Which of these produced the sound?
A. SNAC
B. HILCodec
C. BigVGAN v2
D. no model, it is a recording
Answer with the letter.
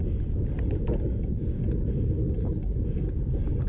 D